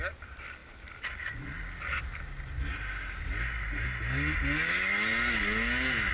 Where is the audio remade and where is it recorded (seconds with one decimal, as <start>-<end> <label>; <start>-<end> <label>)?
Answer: 0.0-6.1 recorded